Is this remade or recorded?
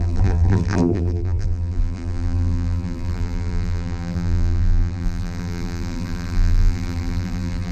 remade